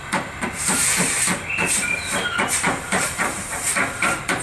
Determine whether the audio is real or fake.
fake